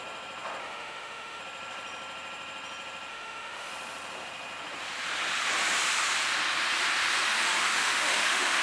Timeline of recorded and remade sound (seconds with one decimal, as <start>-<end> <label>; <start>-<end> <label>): 0.0-0.6 recorded; 0.6-1.4 remade; 1.4-3.1 recorded; 3.1-3.7 remade; 3.7-7.6 recorded; 7.6-8.6 remade